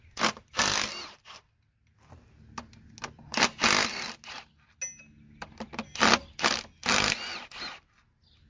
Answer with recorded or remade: recorded